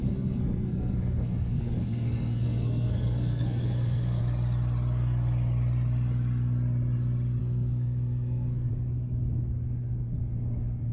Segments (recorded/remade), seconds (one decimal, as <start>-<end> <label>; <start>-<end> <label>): 0.0-4.2 remade; 4.2-7.4 recorded; 7.4-8.7 remade; 8.7-10.9 recorded